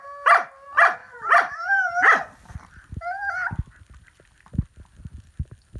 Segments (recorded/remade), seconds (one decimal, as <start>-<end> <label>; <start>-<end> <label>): 0.0-1.0 recorded; 1.0-4.5 remade; 4.5-5.8 recorded